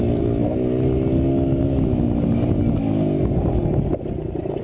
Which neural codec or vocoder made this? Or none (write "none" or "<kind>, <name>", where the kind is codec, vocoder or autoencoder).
none